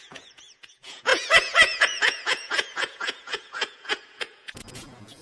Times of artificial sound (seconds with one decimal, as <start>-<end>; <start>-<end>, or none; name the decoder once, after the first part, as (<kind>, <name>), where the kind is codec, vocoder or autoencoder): 0.0-5.2 (vocoder, Vocos)